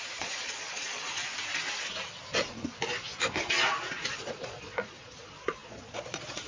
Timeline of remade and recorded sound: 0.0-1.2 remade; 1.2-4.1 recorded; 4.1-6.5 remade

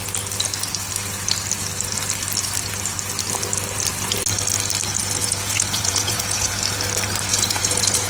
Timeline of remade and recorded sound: 0.0-5.0 recorded; 5.0-6.5 remade; 6.5-7.3 recorded; 7.3-8.1 remade

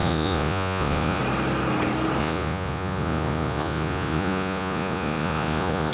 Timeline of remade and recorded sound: 0.0-1.2 remade; 1.2-2.2 recorded; 2.2-5.9 remade

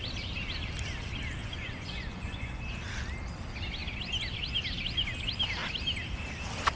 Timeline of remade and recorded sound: 0.0-1.4 recorded; 1.4-2.6 remade; 2.6-6.8 recorded